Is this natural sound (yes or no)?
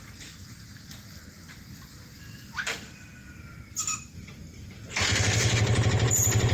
no